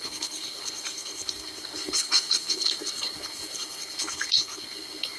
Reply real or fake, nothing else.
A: fake